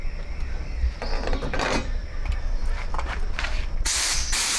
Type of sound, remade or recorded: recorded